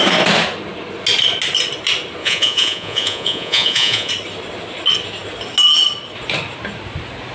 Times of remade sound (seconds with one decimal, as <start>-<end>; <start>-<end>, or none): 2.2-4.1